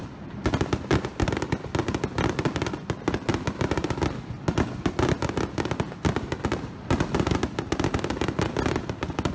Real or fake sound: real